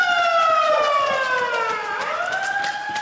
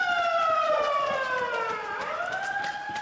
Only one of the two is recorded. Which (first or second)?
first